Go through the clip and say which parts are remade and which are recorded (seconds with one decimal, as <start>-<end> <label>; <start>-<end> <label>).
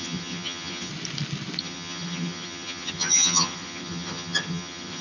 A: 0.0-0.9 remade; 0.9-1.6 recorded; 1.6-5.0 remade